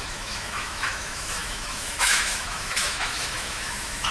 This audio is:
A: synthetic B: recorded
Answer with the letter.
A